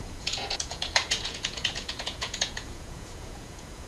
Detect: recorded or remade remade